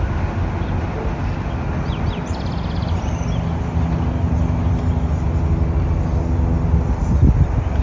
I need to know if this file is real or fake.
real